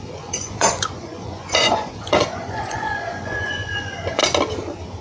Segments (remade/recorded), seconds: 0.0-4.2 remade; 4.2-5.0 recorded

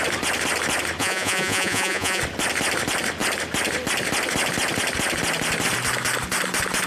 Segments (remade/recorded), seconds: 0.0-1.0 recorded; 1.0-2.2 remade; 2.2-6.9 recorded

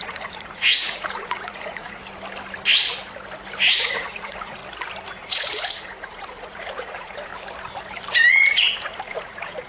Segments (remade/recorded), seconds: 0.0-2.0 remade; 2.0-3.7 recorded; 3.7-4.6 remade; 4.6-5.1 recorded; 5.1-7.3 remade; 7.3-8.3 recorded; 8.3-9.7 remade

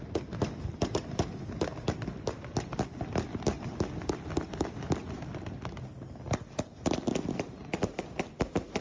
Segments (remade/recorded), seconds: 0.0-8.8 recorded

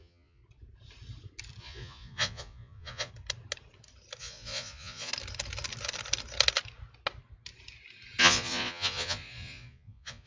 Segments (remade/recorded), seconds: 0.0-0.4 remade; 0.4-1.6 recorded; 1.6-3.1 remade; 3.1-4.2 recorded; 4.2-5.1 remade; 5.1-8.2 recorded; 8.2-10.3 remade

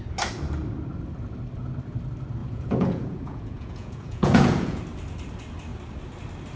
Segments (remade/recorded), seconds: 0.0-2.4 recorded; 2.4-4.8 remade; 4.8-6.6 recorded

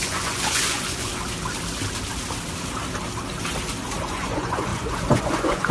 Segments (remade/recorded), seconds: 0.0-1.1 remade; 1.1-4.0 recorded; 4.0-5.7 remade

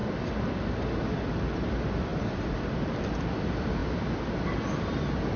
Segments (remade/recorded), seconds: 0.0-5.4 recorded